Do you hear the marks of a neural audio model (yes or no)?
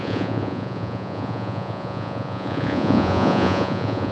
yes